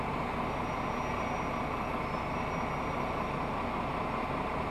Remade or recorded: recorded